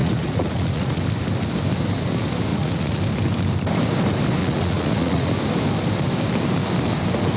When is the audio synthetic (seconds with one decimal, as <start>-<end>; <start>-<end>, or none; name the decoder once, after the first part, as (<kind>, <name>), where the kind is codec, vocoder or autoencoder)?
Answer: 0.0-1.0 (vocoder, Vocos); 2.5-3.0; 4.4-5.3